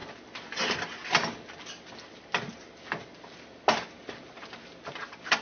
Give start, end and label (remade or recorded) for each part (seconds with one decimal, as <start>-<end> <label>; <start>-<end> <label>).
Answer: 0.0-5.4 recorded